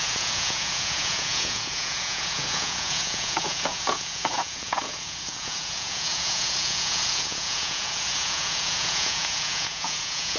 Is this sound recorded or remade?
remade